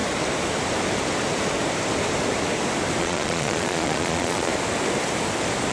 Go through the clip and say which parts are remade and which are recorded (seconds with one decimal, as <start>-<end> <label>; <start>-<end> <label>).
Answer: 0.0-3.0 recorded; 3.0-4.5 remade; 4.5-5.7 recorded